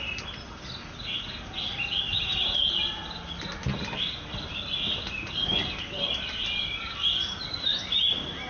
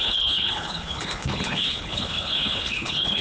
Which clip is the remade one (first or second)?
second